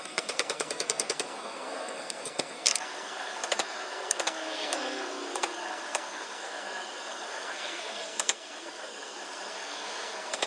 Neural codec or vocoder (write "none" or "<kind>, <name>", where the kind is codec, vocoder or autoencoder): codec, SNAC